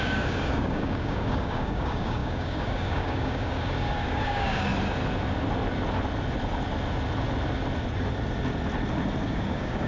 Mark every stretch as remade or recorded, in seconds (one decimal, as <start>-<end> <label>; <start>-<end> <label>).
0.0-4.7 remade; 4.7-9.2 recorded; 9.2-9.9 remade